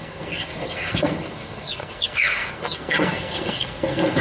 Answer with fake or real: fake